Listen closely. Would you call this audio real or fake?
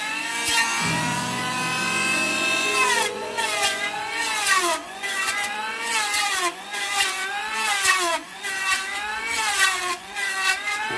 fake